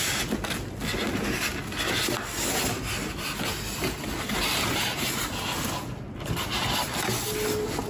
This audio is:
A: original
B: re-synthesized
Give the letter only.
A